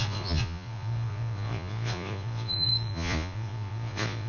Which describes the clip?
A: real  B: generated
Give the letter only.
B